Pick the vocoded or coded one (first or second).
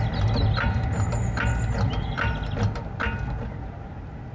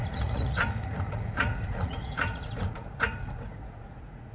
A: second